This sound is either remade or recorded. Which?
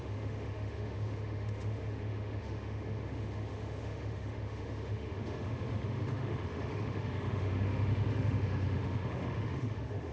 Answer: remade